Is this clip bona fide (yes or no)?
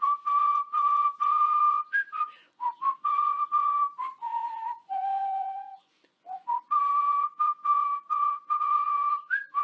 no